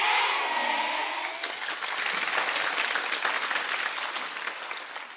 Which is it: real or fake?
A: real